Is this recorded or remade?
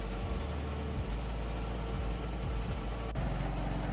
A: recorded